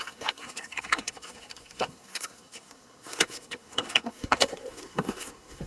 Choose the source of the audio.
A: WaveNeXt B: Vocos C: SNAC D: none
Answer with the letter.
C